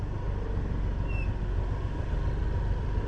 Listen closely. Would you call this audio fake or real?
real